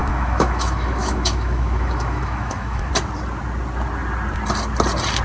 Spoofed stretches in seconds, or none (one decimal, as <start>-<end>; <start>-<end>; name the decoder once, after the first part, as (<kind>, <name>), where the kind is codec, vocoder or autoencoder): 0.0-2.9 (autoencoder, DAC-VAE)